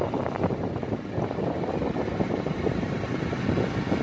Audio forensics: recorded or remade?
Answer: remade